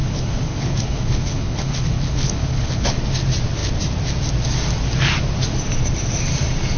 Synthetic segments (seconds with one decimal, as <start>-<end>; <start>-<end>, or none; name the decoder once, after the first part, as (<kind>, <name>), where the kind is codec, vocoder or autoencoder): 0.0-3.0 (codec, HILCodec)